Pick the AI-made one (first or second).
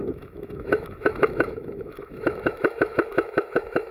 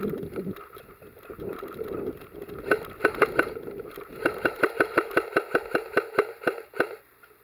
first